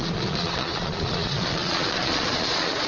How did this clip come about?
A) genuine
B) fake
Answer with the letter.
B